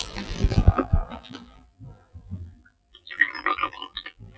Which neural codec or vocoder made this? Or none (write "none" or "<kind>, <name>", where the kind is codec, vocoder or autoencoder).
vocoder, BigVGAN v2